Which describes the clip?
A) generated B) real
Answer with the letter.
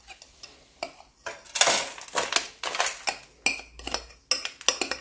B